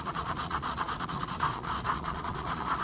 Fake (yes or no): yes